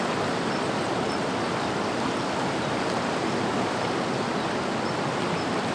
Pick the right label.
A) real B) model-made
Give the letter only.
A